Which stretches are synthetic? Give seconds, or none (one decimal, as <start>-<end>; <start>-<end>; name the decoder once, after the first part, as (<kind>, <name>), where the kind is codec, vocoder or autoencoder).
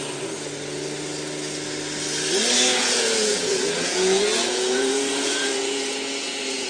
2.7-6.7 (vocoder, Vocos)